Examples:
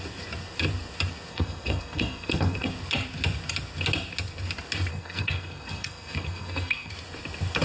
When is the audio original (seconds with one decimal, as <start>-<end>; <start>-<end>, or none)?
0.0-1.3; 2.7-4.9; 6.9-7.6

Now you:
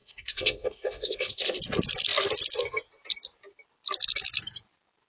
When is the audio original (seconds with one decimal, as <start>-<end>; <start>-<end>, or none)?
1.6-5.1

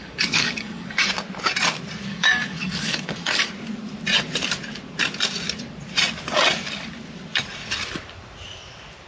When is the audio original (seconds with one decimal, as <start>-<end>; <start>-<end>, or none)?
1.1-2.1; 3.5-9.1

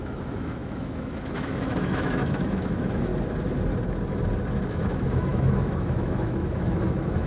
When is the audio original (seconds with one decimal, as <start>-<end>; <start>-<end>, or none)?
3.1-4.7

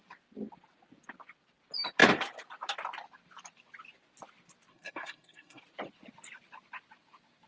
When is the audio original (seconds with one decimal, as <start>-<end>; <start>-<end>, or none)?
0.0-4.7; 5.6-7.5

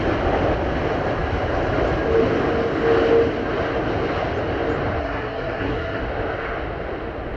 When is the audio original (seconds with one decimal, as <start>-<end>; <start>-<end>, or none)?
0.0-5.0; 6.0-7.4